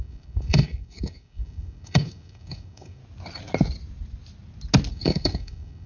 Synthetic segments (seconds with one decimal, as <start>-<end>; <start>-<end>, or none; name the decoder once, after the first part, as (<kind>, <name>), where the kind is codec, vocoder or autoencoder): 0.0-3.0 (codec, DAC); 4.9-5.9